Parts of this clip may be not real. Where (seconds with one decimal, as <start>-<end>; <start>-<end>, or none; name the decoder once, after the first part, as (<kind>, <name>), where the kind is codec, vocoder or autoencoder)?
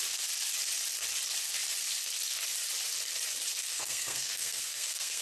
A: 3.6-5.2 (codec, SNAC)